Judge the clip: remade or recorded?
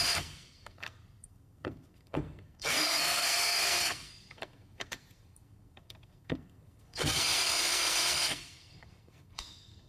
remade